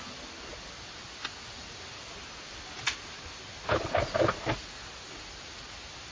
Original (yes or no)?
yes